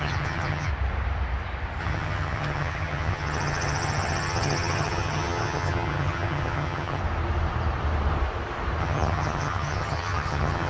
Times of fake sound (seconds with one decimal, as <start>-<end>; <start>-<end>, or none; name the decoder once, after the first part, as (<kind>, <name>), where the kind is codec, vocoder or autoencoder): 0.0-0.7 (vocoder, HiFi-GAN); 1.8-7.0; 8.8-10.7